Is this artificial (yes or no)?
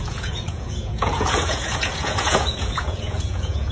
yes